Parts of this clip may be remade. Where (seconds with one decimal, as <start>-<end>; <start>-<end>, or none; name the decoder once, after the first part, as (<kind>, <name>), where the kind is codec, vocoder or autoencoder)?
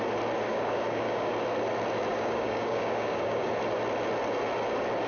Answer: 0.5-1.3 (codec, DAC); 2.1-3.5